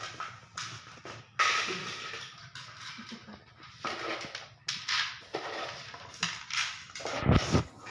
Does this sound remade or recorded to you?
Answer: recorded